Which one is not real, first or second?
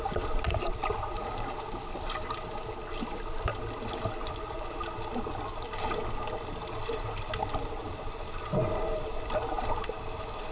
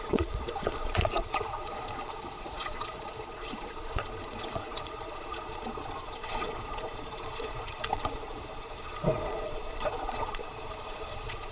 second